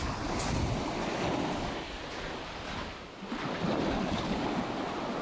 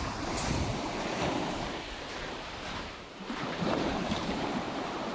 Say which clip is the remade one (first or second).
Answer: second